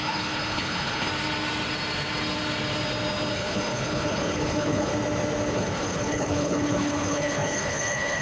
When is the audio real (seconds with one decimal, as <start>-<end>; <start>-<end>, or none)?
1.1-3.3; 4.9-5.5